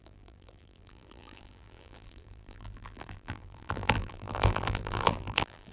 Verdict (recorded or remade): remade